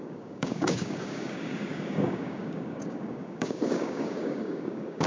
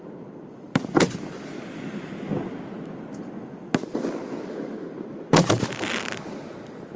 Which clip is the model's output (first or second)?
first